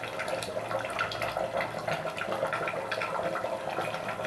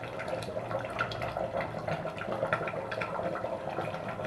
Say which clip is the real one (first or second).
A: first